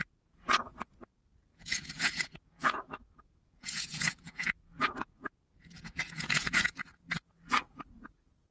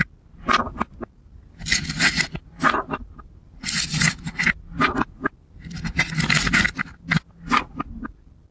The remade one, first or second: first